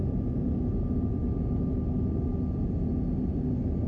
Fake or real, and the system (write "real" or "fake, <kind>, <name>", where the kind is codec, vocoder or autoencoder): real